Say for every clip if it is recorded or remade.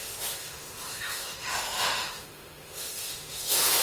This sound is remade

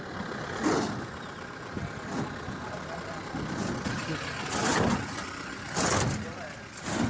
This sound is recorded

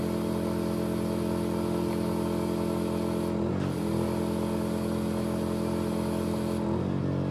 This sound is recorded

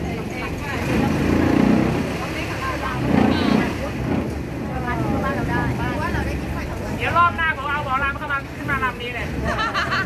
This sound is recorded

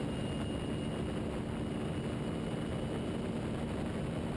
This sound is recorded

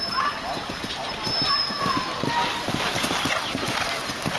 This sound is recorded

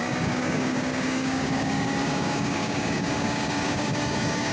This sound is remade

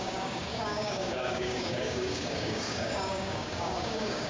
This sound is remade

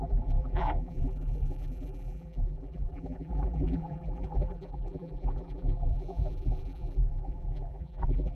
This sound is remade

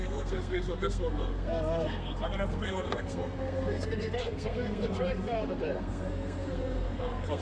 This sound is remade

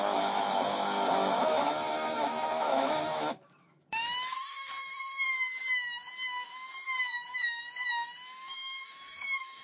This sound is remade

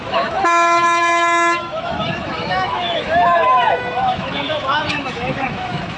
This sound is remade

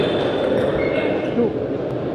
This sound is recorded